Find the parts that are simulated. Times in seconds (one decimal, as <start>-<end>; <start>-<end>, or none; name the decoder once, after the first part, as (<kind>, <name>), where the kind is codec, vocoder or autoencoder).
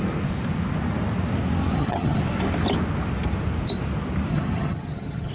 1.7-2.2 (vocoder, HiFi-GAN); 4.3-5.3